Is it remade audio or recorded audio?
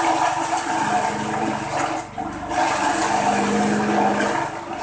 recorded